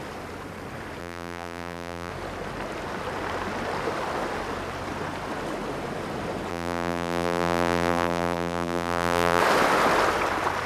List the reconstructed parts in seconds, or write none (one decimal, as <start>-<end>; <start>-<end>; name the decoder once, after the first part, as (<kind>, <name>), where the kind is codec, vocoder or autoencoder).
1.0-2.1 (vocoder, BigVGAN v2); 6.5-9.4